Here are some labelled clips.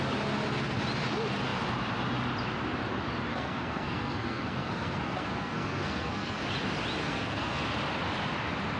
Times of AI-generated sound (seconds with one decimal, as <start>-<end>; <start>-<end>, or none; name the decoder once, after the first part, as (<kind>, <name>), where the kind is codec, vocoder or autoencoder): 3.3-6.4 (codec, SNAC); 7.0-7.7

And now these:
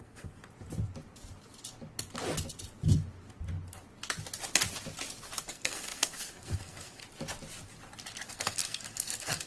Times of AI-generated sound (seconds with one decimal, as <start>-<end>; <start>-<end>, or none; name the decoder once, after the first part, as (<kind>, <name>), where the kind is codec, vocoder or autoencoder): 0.0-0.4 (codec, SNAC); 5.4-7.0; 8.3-9.5

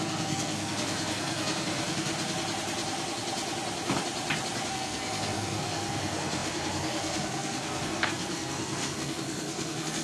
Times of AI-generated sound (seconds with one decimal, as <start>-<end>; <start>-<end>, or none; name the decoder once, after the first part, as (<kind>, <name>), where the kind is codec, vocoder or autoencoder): 0.0-2.1 (codec, SNAC); 4.7-10.0

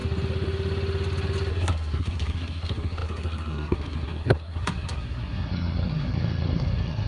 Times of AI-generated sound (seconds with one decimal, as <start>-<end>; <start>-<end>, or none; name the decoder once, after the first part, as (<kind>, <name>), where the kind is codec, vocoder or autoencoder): 1.5-7.1 (codec, SNAC)